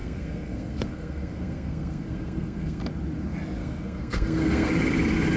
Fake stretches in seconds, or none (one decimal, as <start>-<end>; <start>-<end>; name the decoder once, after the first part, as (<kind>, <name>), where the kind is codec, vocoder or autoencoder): 0.0-2.9 (codec, SNAC); 3.6-4.7